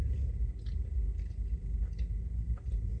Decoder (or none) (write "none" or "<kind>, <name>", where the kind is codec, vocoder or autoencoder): none